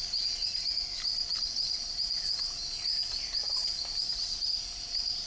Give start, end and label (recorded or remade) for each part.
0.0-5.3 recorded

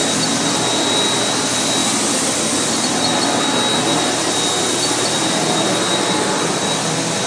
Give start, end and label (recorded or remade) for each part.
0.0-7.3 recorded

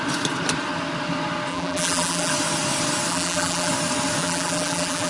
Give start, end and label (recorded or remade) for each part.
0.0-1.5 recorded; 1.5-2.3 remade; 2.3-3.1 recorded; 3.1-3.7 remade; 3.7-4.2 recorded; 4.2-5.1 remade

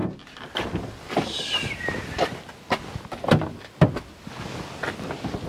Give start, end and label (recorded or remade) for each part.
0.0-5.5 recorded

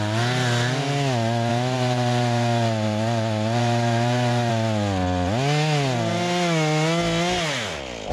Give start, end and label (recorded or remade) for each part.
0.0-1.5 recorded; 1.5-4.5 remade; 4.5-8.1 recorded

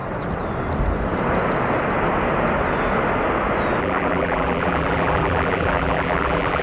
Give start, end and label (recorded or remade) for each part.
0.0-3.8 recorded; 3.8-6.6 remade

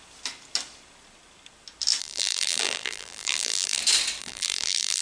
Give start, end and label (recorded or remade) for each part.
0.0-2.0 recorded; 2.0-3.8 remade; 3.8-4.2 recorded; 4.2-5.0 remade